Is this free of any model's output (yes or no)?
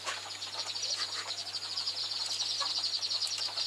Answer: yes